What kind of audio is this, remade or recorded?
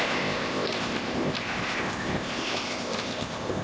remade